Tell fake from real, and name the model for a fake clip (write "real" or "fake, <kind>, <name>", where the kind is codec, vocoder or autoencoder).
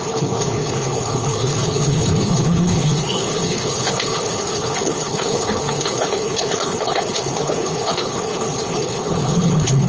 fake, codec, HILCodec